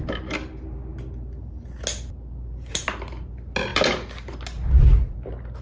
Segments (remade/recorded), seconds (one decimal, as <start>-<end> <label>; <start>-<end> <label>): 0.0-5.6 recorded